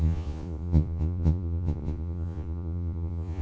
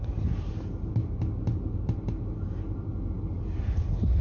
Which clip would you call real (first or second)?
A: second